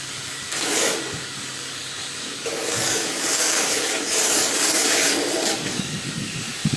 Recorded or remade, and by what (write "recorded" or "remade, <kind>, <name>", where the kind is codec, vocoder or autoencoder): remade, codec, DAC